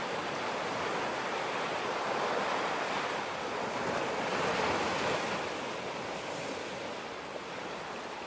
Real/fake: real